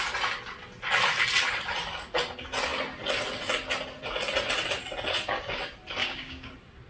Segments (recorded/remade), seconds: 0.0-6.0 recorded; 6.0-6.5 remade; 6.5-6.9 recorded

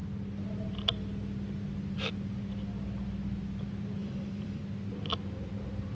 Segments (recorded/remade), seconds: 0.0-4.0 recorded; 4.0-4.6 remade; 4.6-5.9 recorded

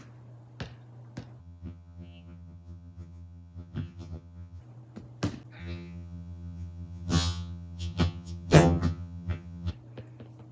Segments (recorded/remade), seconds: 0.0-1.4 recorded; 1.4-4.6 remade; 4.6-5.6 recorded; 5.6-9.7 remade; 9.7-10.5 recorded

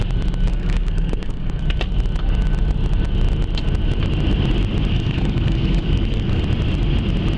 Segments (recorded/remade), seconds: 0.0-0.5 recorded; 0.5-1.6 remade; 1.6-4.9 recorded; 4.9-6.4 remade; 6.4-7.4 recorded

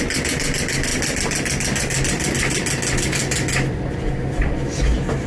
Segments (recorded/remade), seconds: 0.0-5.3 recorded